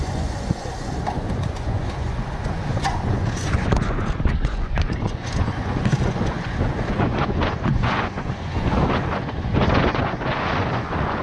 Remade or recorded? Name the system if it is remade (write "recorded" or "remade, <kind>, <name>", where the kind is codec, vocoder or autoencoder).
remade, vocoder, Vocos